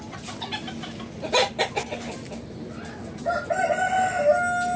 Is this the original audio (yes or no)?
yes